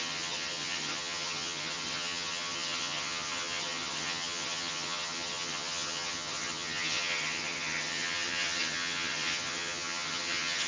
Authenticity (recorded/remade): remade